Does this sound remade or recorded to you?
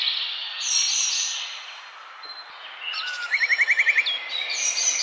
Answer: recorded